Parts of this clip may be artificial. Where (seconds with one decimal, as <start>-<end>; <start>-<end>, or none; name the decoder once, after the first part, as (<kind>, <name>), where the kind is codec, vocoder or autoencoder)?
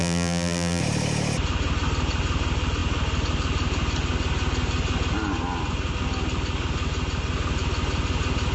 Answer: 0.0-0.8 (vocoder, BigVGAN v2)